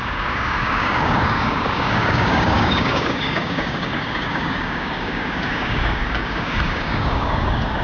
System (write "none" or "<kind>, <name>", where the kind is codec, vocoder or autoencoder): codec, DAC